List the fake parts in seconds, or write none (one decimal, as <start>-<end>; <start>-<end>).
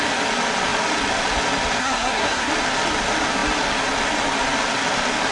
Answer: 1.8-2.5